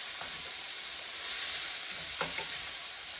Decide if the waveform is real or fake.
fake